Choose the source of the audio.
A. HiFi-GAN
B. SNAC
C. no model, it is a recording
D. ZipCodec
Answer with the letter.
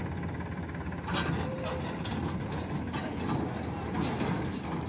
C